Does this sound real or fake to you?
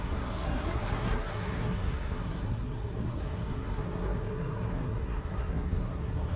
fake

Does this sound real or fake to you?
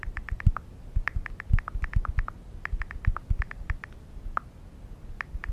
real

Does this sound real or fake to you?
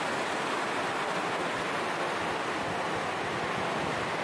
real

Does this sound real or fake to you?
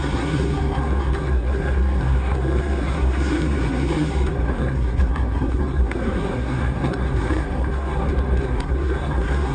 fake